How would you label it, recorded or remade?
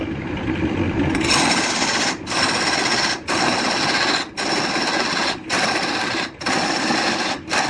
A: recorded